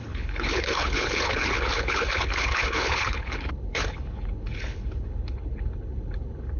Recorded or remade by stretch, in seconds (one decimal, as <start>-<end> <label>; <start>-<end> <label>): 0.0-6.6 remade